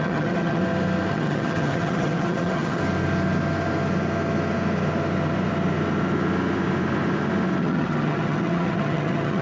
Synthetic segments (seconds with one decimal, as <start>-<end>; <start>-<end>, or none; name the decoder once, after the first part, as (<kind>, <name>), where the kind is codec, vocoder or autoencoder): 0.0-0.6 (vocoder, HiFi-GAN); 1.1-2.8; 7.6-9.4